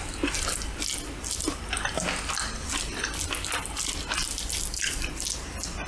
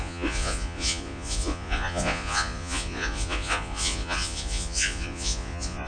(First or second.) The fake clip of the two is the second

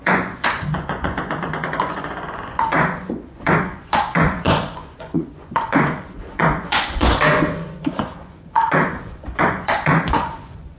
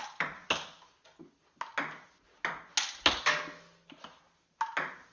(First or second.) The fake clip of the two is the first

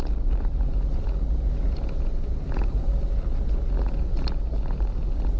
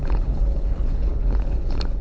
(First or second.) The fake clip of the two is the second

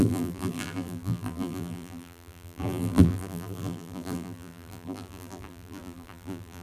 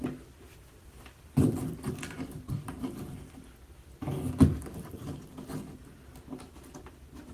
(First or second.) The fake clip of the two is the first